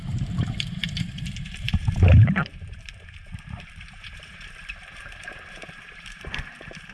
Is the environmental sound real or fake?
fake